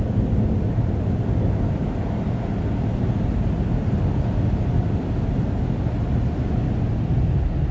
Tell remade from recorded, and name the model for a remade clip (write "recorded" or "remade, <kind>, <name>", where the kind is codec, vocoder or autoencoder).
recorded